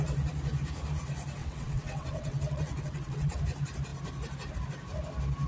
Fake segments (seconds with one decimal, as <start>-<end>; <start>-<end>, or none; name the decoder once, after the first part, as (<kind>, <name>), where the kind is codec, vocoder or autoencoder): 1.4-3.4 (vocoder, WaveNeXt)